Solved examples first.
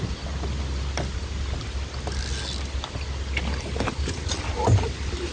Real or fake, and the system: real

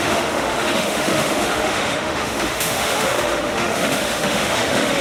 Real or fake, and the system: fake, autoencoder, DAC-VAE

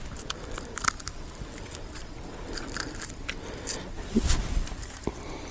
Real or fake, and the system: real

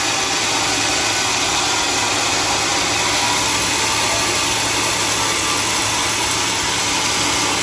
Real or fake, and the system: real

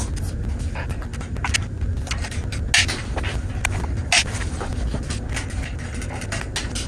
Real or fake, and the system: real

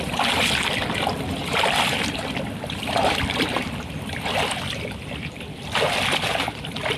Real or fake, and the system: fake, vocoder, BigVGAN v2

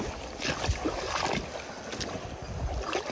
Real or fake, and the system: real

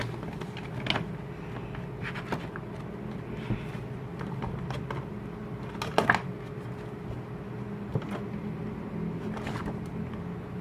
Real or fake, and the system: real